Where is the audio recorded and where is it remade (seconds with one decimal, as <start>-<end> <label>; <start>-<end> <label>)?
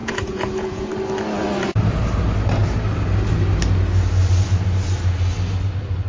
0.0-0.9 remade; 0.9-6.1 recorded